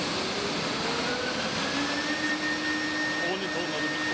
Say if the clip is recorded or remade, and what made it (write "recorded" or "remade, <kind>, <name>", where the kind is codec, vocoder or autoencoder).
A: recorded